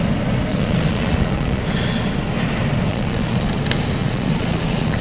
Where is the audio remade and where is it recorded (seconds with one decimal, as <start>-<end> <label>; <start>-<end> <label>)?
0.0-0.5 recorded; 0.5-1.6 remade; 1.6-2.9 recorded; 2.9-3.5 remade; 3.5-4.0 recorded; 4.0-5.0 remade